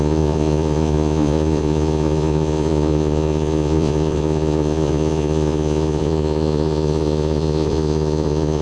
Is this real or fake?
fake